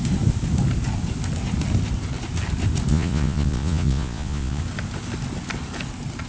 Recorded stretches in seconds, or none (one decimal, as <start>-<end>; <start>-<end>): 0.0-2.9; 4.6-6.3